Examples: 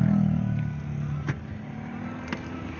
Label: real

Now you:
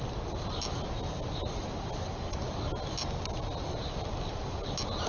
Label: real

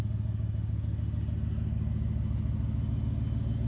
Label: real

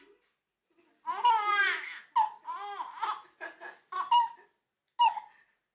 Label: real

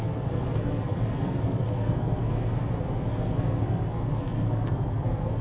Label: fake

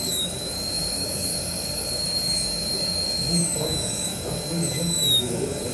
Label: fake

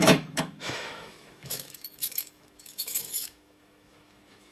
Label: fake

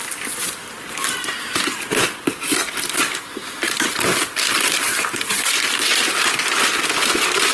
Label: real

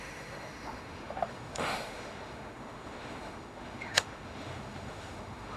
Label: fake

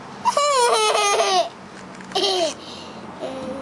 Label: real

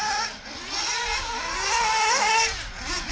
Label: fake